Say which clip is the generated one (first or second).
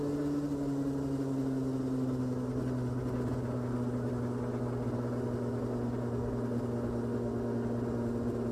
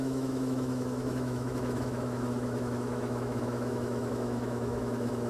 second